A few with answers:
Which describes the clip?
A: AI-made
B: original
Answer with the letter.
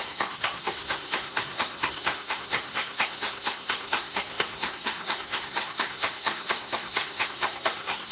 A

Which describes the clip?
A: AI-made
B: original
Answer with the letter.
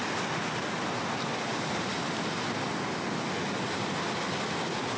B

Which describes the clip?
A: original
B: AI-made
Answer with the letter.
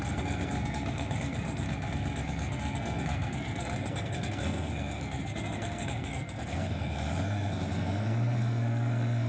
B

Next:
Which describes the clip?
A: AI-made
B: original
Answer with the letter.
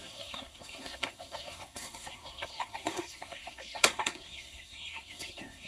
A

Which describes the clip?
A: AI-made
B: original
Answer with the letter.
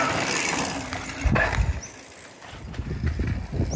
B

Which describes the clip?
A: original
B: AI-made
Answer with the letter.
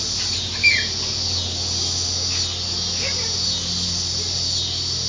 A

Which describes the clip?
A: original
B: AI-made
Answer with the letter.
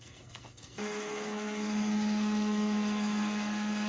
B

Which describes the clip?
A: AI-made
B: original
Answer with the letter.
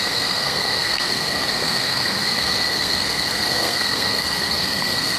A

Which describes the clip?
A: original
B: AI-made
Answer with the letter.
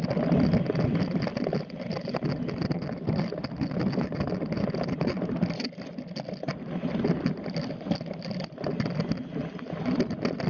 A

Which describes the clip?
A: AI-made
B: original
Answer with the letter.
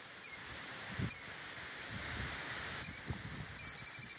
B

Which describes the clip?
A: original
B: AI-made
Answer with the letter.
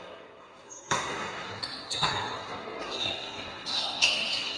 B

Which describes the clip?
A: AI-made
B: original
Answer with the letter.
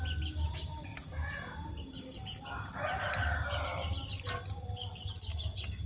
B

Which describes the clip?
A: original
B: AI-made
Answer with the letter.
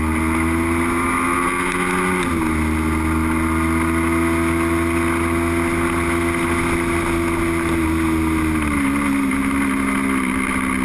A